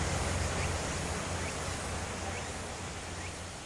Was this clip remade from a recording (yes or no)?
no